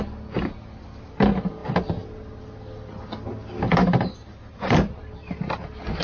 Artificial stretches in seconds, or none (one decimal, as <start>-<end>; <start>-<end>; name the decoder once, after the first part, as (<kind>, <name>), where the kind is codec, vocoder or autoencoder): none